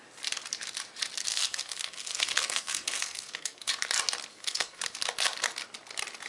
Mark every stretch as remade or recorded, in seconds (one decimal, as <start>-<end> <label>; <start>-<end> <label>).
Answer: 0.0-1.3 recorded; 1.3-3.7 remade; 3.7-4.3 recorded; 4.3-4.8 remade; 4.8-6.3 recorded